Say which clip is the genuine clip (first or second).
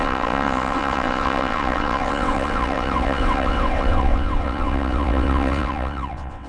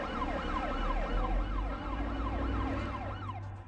second